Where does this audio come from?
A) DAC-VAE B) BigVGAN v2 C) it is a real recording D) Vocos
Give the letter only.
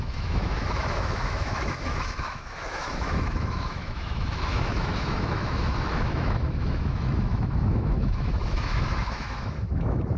A